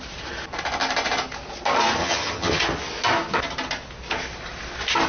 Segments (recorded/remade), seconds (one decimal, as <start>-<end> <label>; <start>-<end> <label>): 0.0-2.0 recorded; 2.0-2.6 remade; 2.6-5.1 recorded